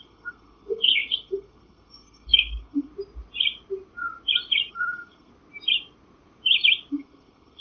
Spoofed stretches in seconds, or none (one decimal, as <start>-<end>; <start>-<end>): 0.0-2.9; 4.7-5.3; 6.9-7.6